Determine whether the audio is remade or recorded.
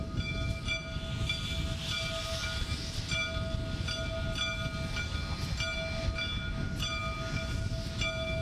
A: recorded